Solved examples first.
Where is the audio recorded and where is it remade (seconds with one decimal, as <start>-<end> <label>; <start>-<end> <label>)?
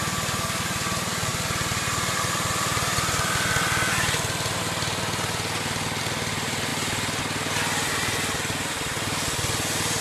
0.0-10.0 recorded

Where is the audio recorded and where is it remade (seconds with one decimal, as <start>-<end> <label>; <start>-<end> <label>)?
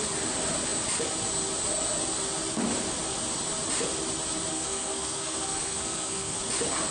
0.0-4.5 recorded; 4.5-6.4 remade; 6.4-6.9 recorded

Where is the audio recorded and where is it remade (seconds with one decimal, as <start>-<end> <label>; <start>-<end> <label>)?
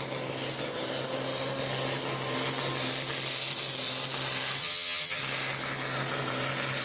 0.0-4.6 recorded; 4.6-5.2 remade; 5.2-6.8 recorded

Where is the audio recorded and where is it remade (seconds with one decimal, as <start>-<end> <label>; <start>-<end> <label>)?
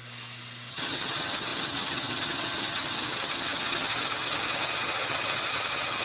0.0-0.7 recorded; 0.7-6.0 remade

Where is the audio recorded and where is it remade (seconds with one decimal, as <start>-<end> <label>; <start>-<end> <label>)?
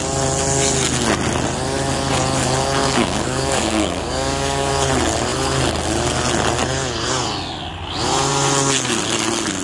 0.0-2.8 recorded; 2.8-4.7 remade; 4.7-9.6 recorded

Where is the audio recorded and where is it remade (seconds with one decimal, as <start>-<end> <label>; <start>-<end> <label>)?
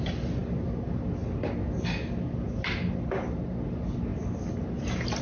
0.0-5.2 recorded